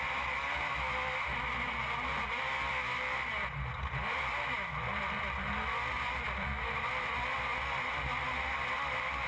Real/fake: real